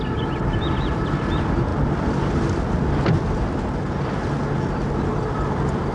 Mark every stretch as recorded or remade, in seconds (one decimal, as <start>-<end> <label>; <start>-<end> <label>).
0.0-1.7 remade; 1.7-5.2 recorded; 5.2-5.9 remade